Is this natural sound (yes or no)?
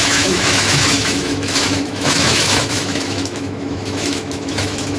no